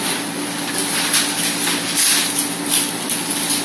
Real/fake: real